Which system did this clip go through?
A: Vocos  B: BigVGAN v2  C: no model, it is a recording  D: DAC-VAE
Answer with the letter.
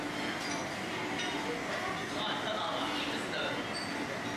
C